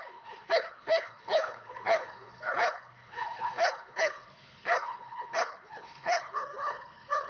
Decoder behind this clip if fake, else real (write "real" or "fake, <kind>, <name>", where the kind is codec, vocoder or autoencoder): fake, codec, HILCodec